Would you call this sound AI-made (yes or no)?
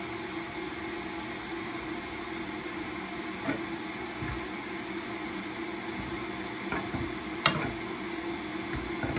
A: no